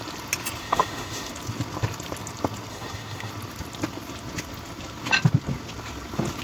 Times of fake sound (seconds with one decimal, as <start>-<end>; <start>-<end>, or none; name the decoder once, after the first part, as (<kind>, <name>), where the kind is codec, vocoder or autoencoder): 0.6-1.3 (autoencoder, DAC-VAE); 2.7-3.3